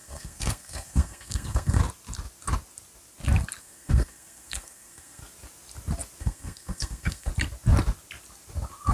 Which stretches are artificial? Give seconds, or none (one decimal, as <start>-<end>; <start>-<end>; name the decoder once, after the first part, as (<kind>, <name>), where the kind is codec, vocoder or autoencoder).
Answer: 0.0-1.8 (codec, SNAC); 3.6-5.2; 6.2-7.3